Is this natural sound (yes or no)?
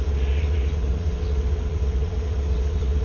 no